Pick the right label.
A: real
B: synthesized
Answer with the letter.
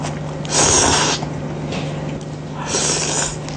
A